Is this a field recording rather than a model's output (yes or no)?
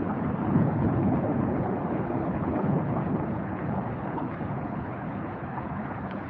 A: no